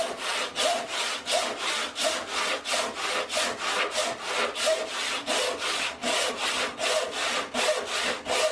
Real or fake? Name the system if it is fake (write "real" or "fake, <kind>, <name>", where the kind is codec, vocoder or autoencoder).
real